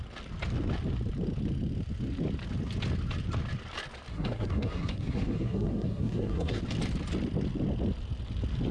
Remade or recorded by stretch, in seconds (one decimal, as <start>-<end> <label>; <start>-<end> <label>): 0.0-4.1 recorded; 4.1-6.6 remade; 6.6-8.7 recorded